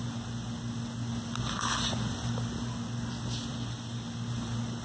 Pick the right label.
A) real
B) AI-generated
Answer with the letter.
A